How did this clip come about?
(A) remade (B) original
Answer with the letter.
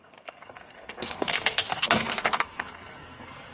A